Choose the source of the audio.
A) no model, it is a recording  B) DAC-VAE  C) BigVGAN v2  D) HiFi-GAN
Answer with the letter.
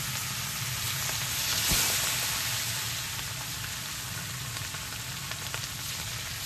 A